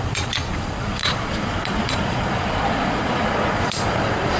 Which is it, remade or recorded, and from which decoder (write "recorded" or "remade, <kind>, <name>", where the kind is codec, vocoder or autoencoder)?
remade, vocoder, Vocos